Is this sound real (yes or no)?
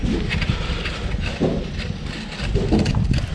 yes